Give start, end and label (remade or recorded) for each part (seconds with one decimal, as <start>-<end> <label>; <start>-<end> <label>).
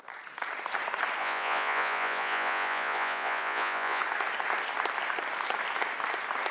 0.0-1.2 recorded; 1.2-4.0 remade; 4.0-6.5 recorded